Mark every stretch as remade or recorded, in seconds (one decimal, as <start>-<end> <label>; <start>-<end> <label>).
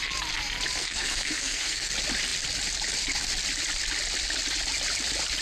0.0-0.8 recorded; 0.8-1.9 remade; 1.9-5.4 recorded